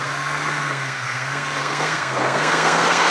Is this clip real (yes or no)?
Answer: no